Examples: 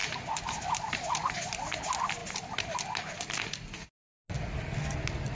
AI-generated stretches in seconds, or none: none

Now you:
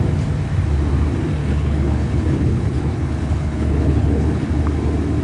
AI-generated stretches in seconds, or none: 1.4-4.5 (codec, HILCodec)

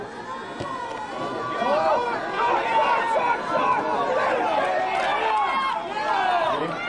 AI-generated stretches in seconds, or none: none